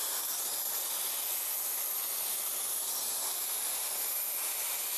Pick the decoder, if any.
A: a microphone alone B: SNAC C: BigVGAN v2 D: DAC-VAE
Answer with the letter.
A